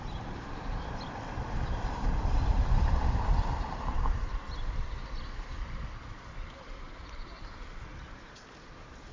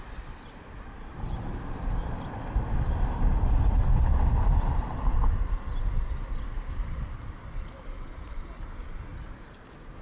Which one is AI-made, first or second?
first